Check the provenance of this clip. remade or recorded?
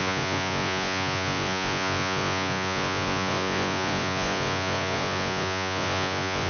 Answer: remade